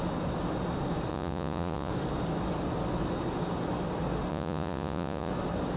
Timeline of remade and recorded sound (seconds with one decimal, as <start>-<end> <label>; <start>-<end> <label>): 0.0-1.1 recorded; 1.1-1.9 remade; 1.9-4.3 recorded; 4.3-5.3 remade; 5.3-5.8 recorded